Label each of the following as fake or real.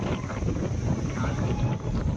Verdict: fake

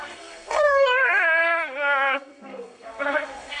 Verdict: fake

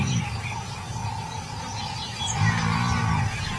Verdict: real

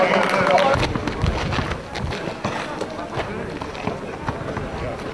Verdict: real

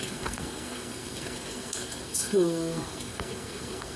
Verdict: fake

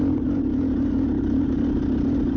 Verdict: real